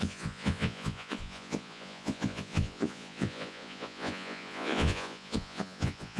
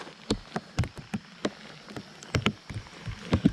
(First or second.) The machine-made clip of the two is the first